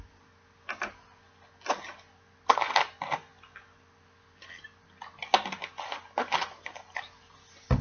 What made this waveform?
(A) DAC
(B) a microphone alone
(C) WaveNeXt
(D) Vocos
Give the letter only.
B